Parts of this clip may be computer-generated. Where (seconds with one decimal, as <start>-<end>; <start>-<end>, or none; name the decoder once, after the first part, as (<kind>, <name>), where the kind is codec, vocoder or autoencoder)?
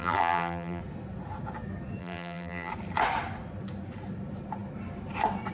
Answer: 0.0-0.8 (vocoder, BigVGAN v2); 2.0-2.7